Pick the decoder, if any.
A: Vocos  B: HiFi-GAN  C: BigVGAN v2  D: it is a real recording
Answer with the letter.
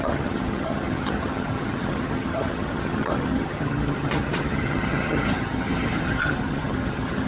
B